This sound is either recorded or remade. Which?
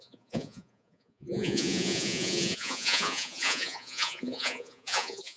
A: remade